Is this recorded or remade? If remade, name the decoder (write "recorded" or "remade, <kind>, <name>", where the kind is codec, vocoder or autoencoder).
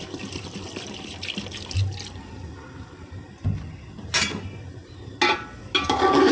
recorded